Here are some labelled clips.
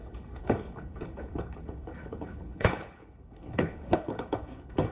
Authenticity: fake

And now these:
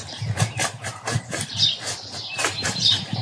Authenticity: fake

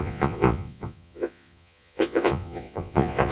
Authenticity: fake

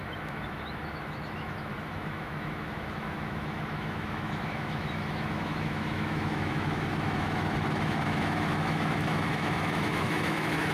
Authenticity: fake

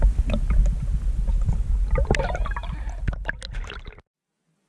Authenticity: real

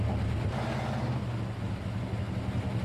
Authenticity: real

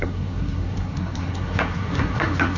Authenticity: fake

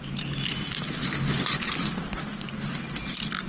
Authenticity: real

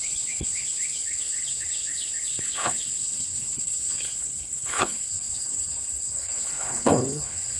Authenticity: fake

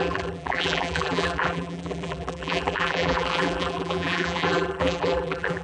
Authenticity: fake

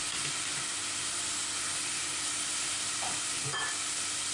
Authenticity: real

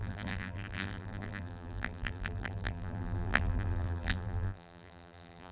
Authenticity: fake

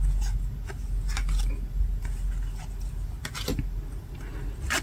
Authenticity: real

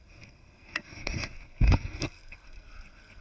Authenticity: fake